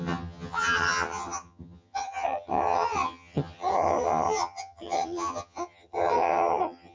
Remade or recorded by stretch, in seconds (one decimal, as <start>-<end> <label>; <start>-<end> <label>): 0.0-6.9 remade